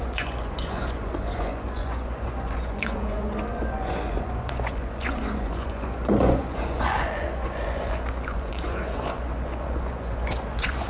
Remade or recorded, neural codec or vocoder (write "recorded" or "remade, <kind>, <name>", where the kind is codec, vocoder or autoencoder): remade, vocoder, Vocos